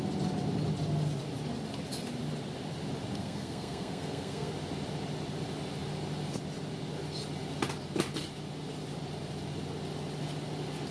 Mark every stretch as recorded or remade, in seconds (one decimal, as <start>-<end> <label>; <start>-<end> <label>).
0.0-3.2 recorded; 3.2-4.5 remade; 4.5-10.9 recorded

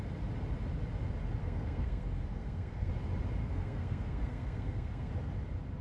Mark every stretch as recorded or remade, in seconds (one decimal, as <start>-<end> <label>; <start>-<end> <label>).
0.0-1.4 recorded; 1.4-2.9 remade; 2.9-3.4 recorded; 3.4-5.1 remade; 5.1-5.8 recorded

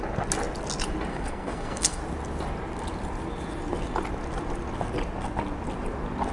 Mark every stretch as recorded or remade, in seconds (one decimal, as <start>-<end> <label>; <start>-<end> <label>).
0.0-1.1 recorded; 1.1-2.0 remade; 2.0-6.3 recorded